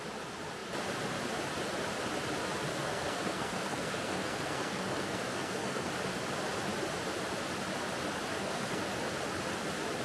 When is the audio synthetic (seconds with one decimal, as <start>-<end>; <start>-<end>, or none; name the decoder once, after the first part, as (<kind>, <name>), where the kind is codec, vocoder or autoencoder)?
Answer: 2.7-5.9 (codec, SNAC); 8.3-8.8